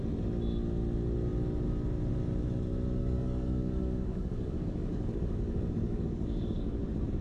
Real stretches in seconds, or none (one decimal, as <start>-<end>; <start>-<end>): 0.0-3.0; 6.8-7.2